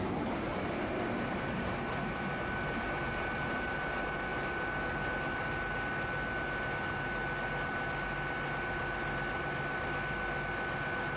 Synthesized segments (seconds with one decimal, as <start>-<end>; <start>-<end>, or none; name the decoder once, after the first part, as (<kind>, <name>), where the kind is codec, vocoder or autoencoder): 0.5-1.7 (vocoder, BigVGAN v2)